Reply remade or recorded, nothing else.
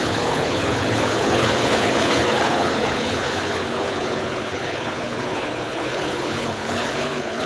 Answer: remade